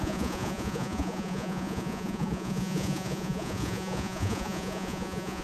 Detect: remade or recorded remade